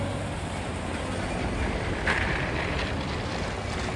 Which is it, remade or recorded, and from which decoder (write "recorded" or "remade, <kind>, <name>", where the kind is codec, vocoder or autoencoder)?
recorded